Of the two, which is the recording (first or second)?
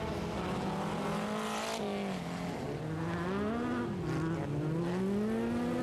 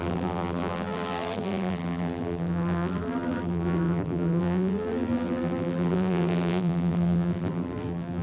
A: first